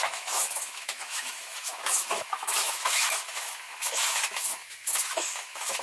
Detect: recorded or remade remade